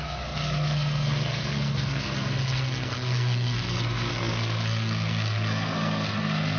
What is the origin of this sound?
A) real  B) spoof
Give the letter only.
B